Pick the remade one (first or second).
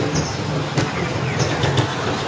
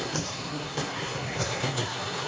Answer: second